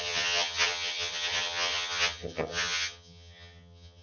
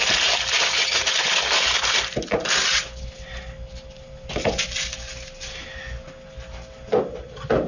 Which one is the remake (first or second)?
first